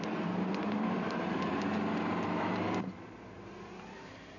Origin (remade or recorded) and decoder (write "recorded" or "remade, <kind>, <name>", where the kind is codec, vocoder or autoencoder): remade, vocoder, BigVGAN v2